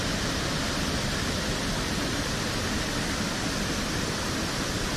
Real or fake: fake